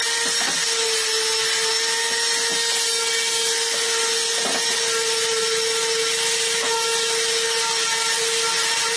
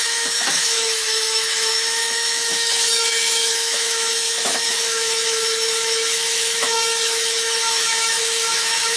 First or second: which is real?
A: first